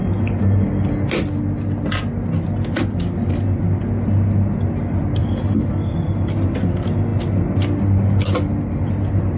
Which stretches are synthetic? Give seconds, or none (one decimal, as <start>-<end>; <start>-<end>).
none